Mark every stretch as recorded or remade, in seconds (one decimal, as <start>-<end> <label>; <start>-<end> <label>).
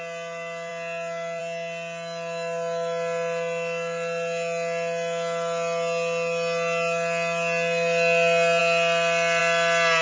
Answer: 0.0-10.0 recorded